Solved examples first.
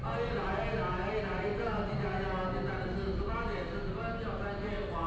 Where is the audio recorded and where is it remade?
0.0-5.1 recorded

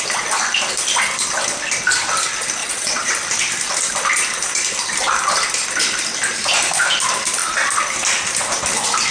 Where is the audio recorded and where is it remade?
0.0-2.6 recorded; 2.6-3.1 remade; 3.1-9.1 recorded

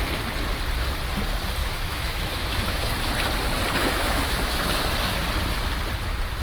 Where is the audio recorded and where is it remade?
0.0-1.6 recorded; 1.6-3.1 remade; 3.1-3.8 recorded; 3.8-4.8 remade; 4.8-6.4 recorded

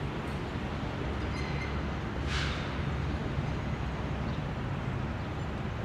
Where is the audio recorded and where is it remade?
0.0-5.8 recorded

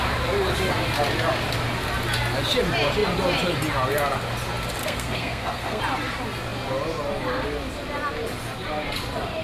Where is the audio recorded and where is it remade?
0.0-4.8 recorded; 4.8-5.8 remade; 5.8-9.4 recorded

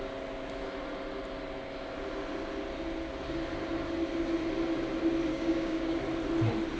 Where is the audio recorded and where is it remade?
0.0-5.3 recorded; 5.3-6.0 remade; 6.0-6.8 recorded